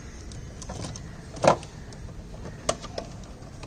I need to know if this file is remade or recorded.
recorded